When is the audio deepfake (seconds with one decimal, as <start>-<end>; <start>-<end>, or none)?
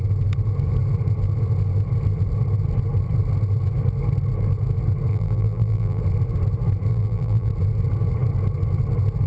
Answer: 5.1-6.0; 6.9-7.5